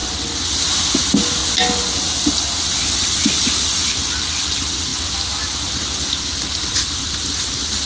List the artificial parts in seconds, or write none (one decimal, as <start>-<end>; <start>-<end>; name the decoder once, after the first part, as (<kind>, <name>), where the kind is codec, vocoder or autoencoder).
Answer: 0.6-1.4 (vocoder, BigVGAN v2); 3.4-4.9; 5.8-7.0; 7.5-7.9